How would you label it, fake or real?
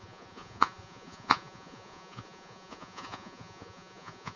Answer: fake